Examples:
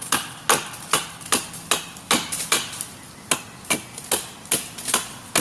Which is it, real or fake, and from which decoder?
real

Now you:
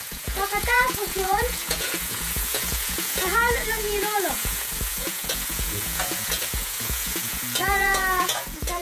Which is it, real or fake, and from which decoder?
fake, vocoder, Vocos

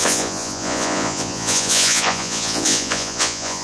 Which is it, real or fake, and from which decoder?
fake, vocoder, Vocos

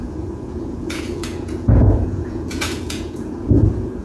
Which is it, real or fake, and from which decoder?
fake, vocoder, Vocos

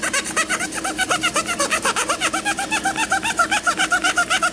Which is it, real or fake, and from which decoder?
real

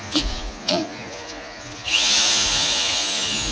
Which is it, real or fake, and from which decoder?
fake, vocoder, Vocos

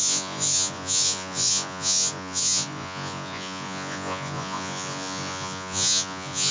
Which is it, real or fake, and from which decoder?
fake, vocoder, Vocos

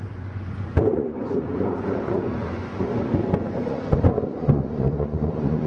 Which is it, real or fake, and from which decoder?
fake, vocoder, Vocos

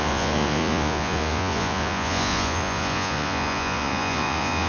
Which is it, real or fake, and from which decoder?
fake, vocoder, Vocos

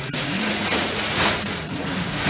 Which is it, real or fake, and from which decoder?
fake, vocoder, Vocos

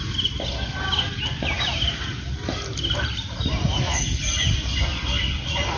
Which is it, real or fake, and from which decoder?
real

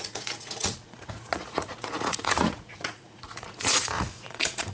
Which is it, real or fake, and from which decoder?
fake, vocoder, Vocos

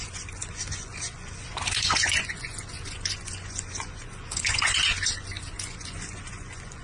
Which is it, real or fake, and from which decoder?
fake, vocoder, Vocos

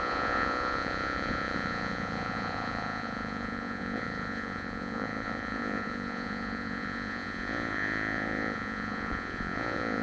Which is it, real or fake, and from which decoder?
fake, vocoder, Vocos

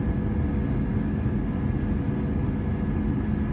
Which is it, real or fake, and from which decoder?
real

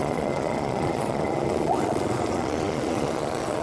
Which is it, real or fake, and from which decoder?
fake, vocoder, Vocos